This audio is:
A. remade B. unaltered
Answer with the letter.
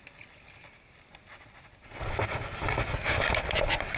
B